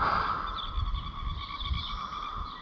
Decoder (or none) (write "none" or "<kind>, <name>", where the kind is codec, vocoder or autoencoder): none